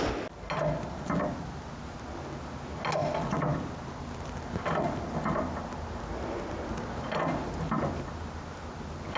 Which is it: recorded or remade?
recorded